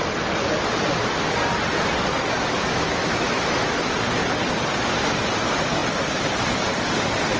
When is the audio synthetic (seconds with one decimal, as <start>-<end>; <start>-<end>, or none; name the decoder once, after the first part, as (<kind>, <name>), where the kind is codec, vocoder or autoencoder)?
2.6-3.4 (autoencoder, DAC-VAE)